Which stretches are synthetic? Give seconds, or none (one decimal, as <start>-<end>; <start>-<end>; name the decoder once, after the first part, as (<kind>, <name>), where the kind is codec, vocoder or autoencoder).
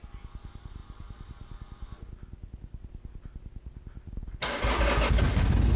none